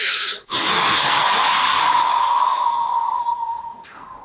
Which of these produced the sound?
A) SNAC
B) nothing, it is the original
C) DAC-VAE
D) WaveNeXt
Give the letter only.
A